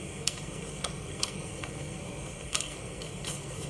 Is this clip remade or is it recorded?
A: remade